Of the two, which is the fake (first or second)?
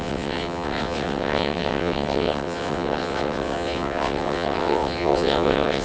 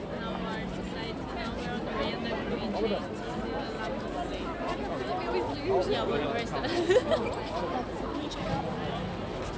first